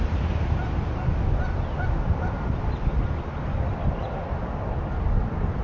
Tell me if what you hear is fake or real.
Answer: real